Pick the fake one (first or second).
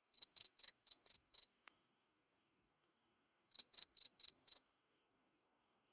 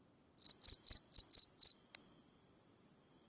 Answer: first